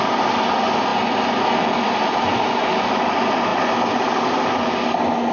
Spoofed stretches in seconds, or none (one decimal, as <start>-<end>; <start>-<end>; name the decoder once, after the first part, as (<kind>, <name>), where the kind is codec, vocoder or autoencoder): none